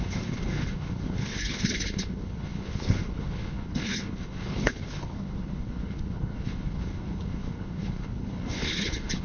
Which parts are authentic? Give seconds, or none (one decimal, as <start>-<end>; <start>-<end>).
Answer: none